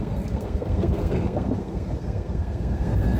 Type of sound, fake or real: fake